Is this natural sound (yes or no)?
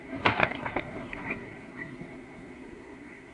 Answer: no